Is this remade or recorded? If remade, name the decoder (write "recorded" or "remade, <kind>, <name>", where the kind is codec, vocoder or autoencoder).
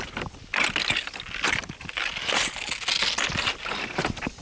recorded